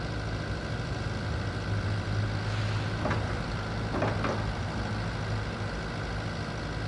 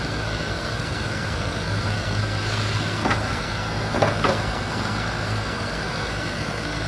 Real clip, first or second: first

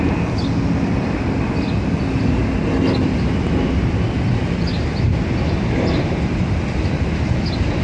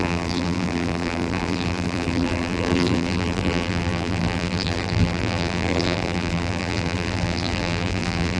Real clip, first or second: first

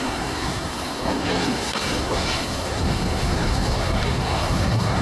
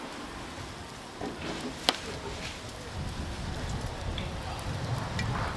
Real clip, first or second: second